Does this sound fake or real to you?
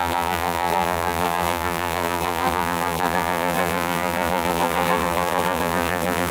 fake